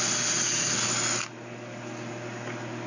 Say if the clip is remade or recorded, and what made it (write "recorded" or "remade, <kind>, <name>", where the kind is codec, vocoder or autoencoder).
recorded